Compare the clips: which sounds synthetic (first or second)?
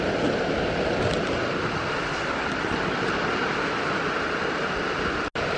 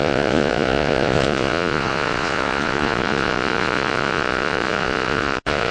second